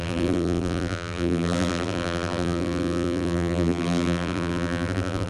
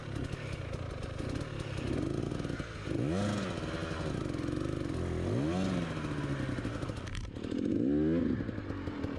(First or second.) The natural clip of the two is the second